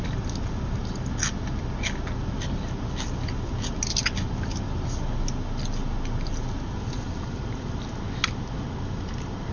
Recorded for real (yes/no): yes